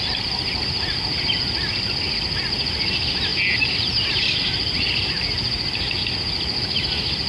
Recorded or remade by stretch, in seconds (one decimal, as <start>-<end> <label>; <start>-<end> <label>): 0.0-7.3 recorded